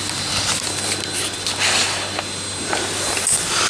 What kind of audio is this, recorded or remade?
recorded